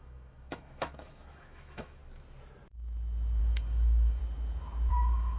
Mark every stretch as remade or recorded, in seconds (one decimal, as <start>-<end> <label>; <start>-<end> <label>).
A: 0.0-2.0 remade; 2.0-3.4 recorded; 3.4-4.2 remade; 4.2-4.9 recorded; 4.9-5.4 remade